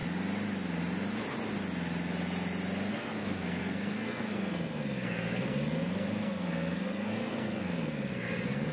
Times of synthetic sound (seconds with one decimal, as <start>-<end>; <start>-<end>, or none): 2.9-8.7